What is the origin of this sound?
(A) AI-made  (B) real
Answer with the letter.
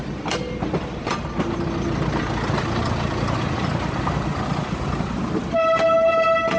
B